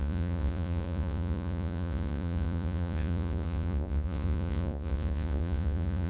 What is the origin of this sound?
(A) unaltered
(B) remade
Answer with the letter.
B